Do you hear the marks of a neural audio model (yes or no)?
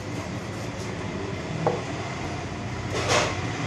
no